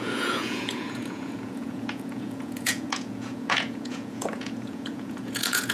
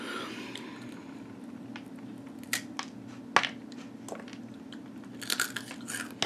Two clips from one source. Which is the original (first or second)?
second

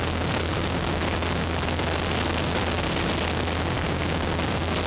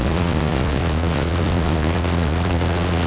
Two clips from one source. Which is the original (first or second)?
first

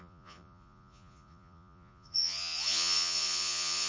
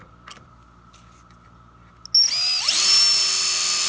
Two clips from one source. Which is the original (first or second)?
second